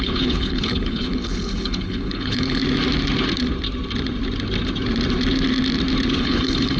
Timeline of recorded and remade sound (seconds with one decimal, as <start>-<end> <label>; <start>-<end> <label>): 0.0-2.6 remade; 2.6-6.2 recorded; 6.2-6.8 remade